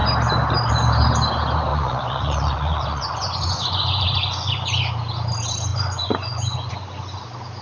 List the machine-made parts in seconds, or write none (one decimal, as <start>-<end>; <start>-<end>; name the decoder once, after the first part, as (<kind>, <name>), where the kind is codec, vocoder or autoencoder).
1.7-4.9 (vocoder, Vocos); 5.7-6.7